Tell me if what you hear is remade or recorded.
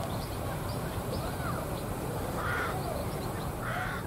remade